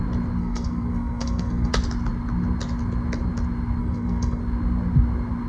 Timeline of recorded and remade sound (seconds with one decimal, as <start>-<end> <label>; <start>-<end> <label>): 0.0-0.4 recorded; 0.4-1.7 remade; 1.7-3.8 recorded; 3.8-4.4 remade; 4.4-5.5 recorded

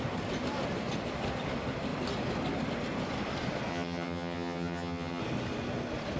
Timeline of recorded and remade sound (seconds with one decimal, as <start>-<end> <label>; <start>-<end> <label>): 0.0-3.7 recorded; 3.7-5.2 remade; 5.2-6.2 recorded

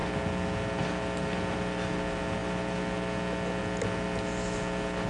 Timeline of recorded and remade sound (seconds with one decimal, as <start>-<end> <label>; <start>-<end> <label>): 0.0-5.1 recorded

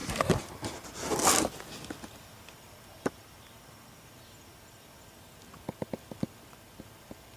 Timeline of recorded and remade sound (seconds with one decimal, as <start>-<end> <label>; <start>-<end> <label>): 0.0-7.4 recorded

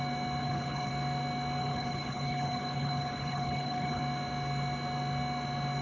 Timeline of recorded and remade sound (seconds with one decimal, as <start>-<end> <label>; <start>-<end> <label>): 0.0-0.4 recorded; 0.4-0.9 remade; 0.9-1.6 recorded; 1.6-4.0 remade; 4.0-5.8 recorded